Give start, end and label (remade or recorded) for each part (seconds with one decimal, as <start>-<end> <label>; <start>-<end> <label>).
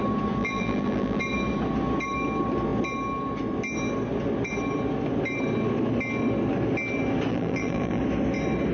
0.0-0.4 recorded; 0.4-1.2 remade; 1.2-7.3 recorded; 7.3-8.0 remade; 8.0-8.7 recorded